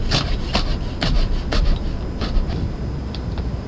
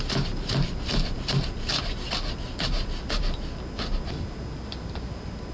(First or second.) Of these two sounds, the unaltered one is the second